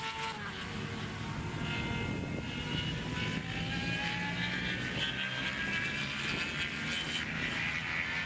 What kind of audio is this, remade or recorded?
recorded